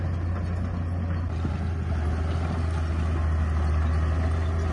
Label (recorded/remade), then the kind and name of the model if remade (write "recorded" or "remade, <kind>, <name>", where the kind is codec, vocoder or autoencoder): recorded